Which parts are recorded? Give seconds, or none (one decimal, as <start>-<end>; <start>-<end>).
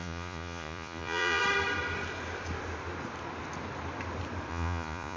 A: 1.4-4.5